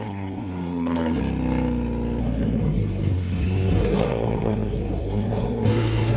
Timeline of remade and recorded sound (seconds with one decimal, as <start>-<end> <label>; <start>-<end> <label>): 0.0-1.2 remade; 1.2-2.2 recorded; 2.2-6.2 remade